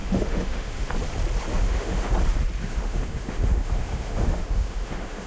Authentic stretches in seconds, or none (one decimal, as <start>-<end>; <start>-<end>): 0.9-1.5; 2.1-2.6